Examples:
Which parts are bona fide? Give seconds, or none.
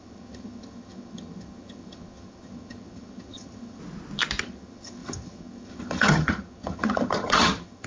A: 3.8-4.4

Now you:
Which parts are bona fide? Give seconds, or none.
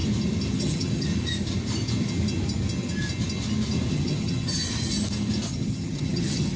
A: 0.0-0.5; 1.1-3.9; 4.6-5.5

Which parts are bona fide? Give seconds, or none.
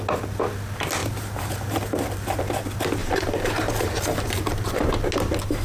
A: 0.0-1.0; 2.4-3.0; 4.9-5.6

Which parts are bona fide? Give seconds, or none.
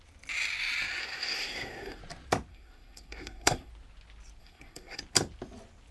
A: 0.0-1.0; 2.0-2.5; 3.7-4.4; 5.0-5.9